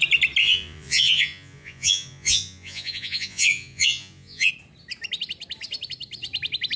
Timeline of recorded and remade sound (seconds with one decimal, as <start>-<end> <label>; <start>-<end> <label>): 0.0-0.4 recorded; 0.4-4.5 remade; 4.5-6.8 recorded